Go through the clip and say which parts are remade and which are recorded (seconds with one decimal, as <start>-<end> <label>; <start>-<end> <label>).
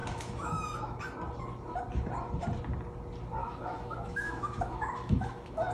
0.0-1.0 remade; 1.0-3.4 recorded; 3.4-5.7 remade